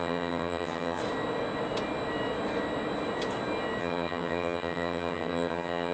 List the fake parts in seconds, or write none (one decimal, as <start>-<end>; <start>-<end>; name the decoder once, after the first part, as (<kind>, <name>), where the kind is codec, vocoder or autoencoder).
0.0-1.0 (vocoder, HiFi-GAN); 3.8-5.9